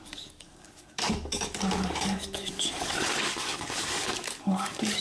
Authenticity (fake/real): fake